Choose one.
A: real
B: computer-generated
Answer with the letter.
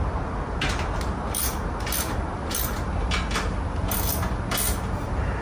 A